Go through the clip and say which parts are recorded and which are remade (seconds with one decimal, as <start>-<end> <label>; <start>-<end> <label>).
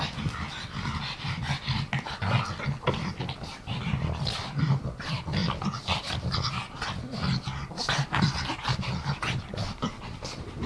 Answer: 0.0-10.7 recorded